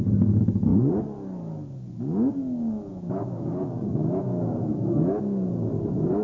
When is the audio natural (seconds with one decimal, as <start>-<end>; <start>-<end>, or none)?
0.0-2.9; 3.5-3.9; 5.2-6.2